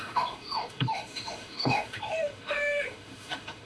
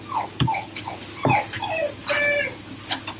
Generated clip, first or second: first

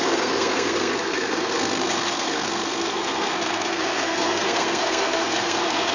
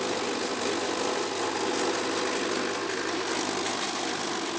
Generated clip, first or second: first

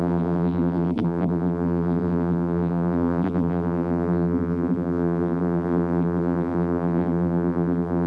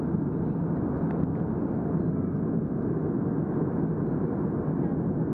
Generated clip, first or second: first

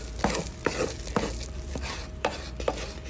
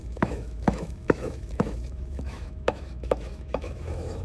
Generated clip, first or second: second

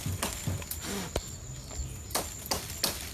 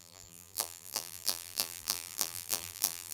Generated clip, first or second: second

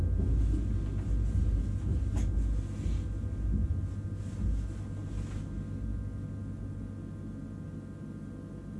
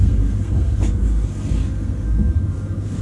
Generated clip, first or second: second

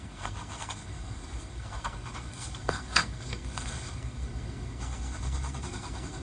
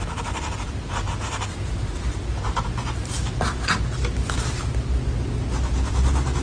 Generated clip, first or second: first